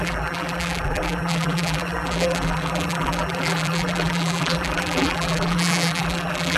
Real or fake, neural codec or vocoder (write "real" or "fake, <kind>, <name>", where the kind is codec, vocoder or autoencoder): fake, vocoder, BigVGAN v2